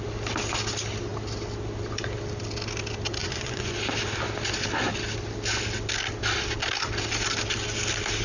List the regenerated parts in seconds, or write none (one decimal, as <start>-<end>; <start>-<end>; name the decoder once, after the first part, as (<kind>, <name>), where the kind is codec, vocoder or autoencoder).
3.2-3.8 (vocoder, Vocos)